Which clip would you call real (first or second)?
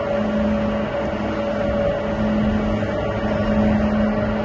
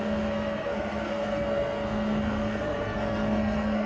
first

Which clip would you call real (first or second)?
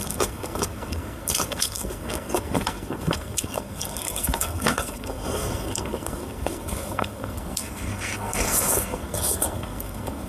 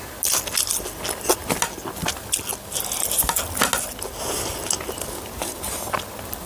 second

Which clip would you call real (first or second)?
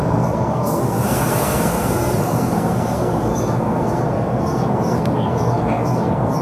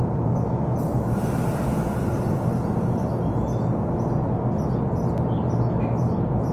second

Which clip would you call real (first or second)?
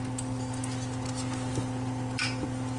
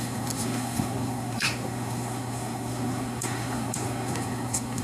first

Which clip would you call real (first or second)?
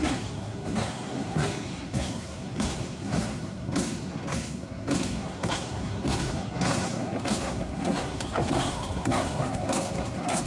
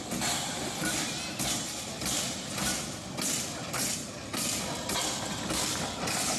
second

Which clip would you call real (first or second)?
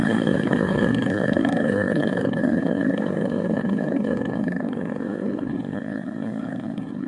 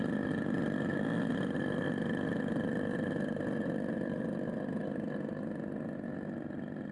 second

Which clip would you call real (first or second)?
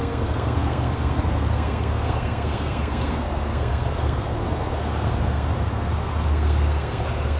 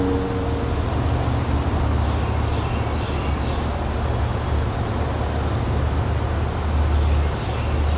second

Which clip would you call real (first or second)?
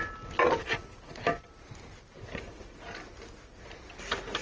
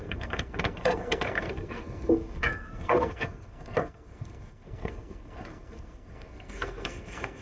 first